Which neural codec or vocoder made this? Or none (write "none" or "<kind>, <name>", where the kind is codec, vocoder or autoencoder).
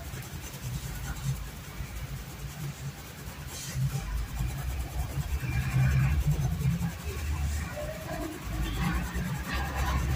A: vocoder, BigVGAN v2